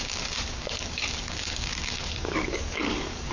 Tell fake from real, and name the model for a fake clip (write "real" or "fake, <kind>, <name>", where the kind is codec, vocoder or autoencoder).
fake, codec, DAC